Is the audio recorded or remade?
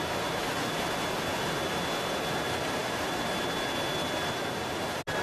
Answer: recorded